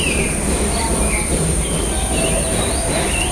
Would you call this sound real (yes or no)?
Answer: yes